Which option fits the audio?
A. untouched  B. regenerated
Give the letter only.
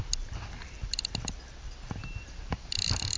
A